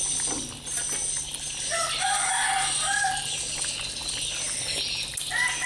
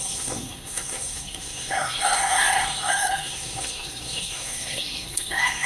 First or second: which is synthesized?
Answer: second